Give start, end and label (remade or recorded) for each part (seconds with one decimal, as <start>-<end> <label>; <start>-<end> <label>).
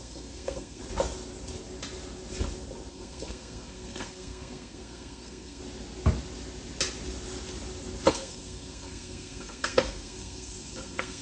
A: 0.0-0.8 remade; 0.8-2.9 recorded; 2.9-5.6 remade; 5.6-8.1 recorded; 8.1-11.2 remade